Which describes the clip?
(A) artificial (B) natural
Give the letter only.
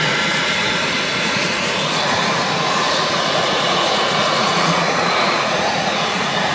A